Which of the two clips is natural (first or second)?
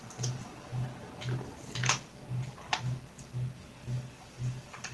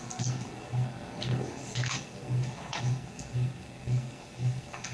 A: first